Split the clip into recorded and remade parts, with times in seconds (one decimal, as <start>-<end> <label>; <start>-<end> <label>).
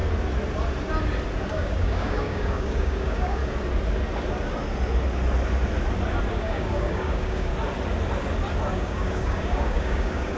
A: 0.0-1.5 recorded; 1.5-3.4 remade; 3.4-6.3 recorded; 6.3-7.5 remade; 7.5-8.7 recorded; 8.7-10.4 remade